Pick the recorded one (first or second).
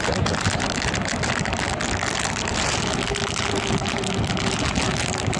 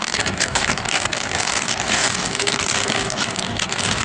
first